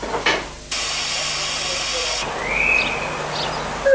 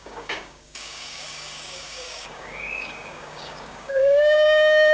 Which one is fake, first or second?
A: second